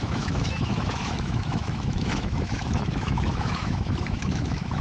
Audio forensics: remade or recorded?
remade